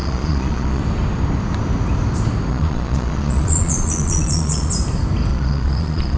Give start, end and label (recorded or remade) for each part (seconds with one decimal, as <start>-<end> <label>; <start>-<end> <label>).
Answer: 0.0-0.8 remade; 0.8-2.5 recorded; 2.5-4.7 remade; 4.7-5.3 recorded; 5.3-6.2 remade